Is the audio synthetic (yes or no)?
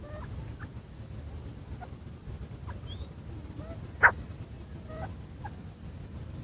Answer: no